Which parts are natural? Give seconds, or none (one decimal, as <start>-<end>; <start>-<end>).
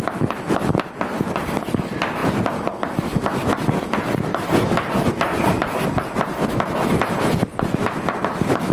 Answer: 0.0-8.7